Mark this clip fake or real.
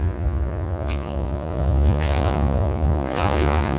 fake